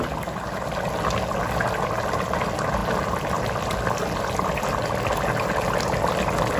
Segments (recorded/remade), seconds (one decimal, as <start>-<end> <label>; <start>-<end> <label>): 0.0-6.6 recorded